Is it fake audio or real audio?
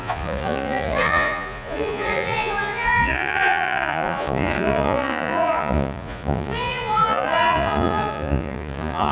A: fake